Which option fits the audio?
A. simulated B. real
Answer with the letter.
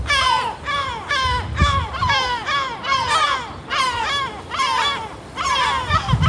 B